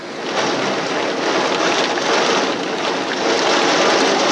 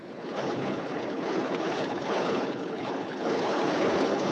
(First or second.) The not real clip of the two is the second